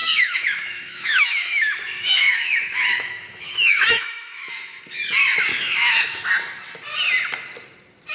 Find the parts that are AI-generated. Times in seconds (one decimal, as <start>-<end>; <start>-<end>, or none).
0.0-4.8; 5.5-6.3